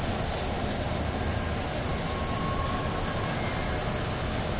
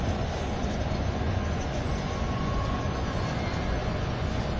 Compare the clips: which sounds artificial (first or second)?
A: second